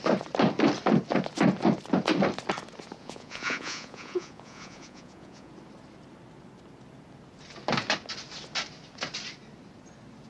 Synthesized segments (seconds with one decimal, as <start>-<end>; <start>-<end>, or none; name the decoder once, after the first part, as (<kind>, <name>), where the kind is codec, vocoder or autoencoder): 3.0-5.5 (vocoder, Vocos)

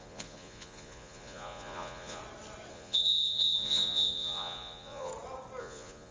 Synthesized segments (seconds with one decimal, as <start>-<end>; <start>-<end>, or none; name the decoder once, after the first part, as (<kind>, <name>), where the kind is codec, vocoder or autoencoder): 0.0-2.2 (vocoder, Vocos); 2.7-5.1; 5.6-6.1

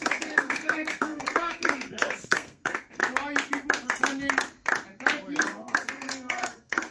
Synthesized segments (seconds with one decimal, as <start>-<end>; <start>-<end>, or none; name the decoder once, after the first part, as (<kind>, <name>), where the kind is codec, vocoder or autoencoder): 0.0-3.0 (codec, SNAC); 5.4-6.9

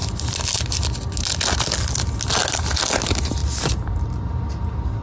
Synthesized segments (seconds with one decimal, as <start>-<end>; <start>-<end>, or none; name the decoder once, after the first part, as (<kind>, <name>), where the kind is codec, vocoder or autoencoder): 3.4-4.2 (vocoder, BigVGAN v2)

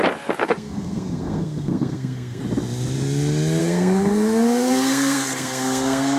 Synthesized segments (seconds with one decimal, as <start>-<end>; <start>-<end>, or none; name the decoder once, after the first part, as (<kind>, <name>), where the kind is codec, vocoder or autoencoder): 0.4-2.4 (codec, SNAC); 3.6-6.2

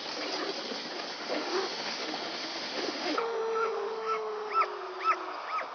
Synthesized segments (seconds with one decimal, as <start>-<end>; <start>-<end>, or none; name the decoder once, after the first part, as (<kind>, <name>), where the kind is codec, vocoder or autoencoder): 1.1-4.5 (autoencoder, DAC-VAE)

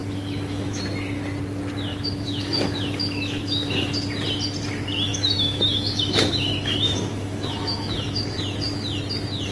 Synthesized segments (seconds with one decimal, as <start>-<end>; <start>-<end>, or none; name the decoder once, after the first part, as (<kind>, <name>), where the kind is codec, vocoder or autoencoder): 0.0-0.8 (autoencoder, DAC-VAE); 1.9-3.9; 5.1-8.4

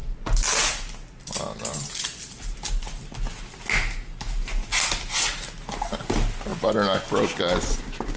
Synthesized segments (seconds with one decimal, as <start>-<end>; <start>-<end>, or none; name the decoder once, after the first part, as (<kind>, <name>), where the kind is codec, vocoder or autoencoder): none